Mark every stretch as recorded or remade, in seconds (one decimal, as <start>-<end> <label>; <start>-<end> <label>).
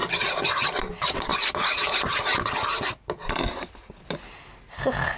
0.0-0.9 remade; 0.9-5.2 recorded